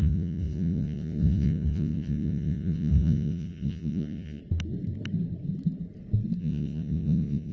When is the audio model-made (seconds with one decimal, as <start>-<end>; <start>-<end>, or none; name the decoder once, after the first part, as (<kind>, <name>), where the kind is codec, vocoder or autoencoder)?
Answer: 0.0-4.4 (vocoder, Vocos); 6.4-7.5